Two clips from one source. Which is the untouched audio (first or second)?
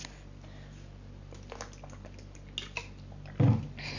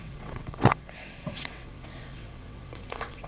first